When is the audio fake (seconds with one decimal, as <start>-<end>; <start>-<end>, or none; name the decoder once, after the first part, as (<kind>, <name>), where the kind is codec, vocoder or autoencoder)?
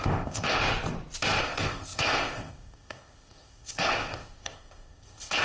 0.0-0.6 (codec, ZipCodec); 1.4-5.4